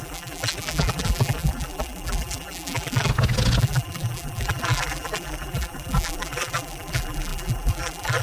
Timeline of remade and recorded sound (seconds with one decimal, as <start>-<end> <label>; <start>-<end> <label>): 0.0-3.1 remade; 3.1-3.6 recorded; 3.6-8.2 remade